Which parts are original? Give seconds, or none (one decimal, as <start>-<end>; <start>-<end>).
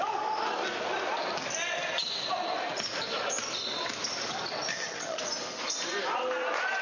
0.0-4.7; 5.2-6.8